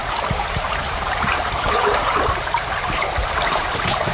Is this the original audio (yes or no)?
no